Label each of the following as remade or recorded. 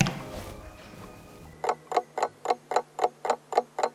recorded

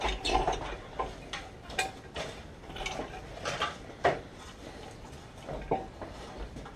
recorded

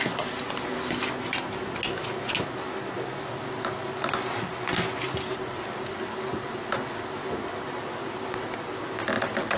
recorded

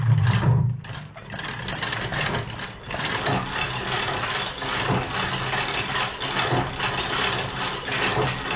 recorded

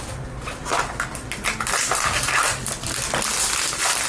recorded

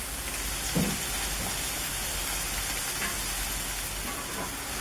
recorded